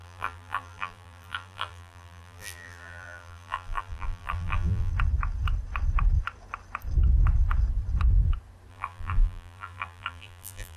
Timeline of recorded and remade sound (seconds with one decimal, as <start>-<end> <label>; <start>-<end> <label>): 0.0-4.9 remade; 4.9-8.7 recorded; 8.7-10.8 remade